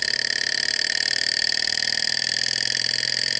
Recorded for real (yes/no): yes